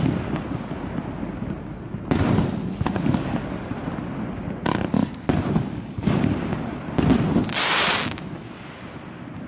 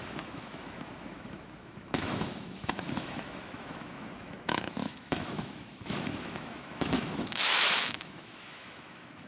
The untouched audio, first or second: first